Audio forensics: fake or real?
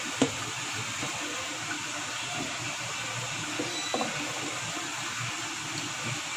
real